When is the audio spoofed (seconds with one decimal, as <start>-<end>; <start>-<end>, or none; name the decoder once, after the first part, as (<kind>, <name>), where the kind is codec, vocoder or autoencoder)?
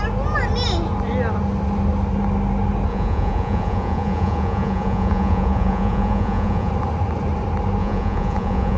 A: 2.9-6.7 (vocoder, Vocos); 7.8-8.8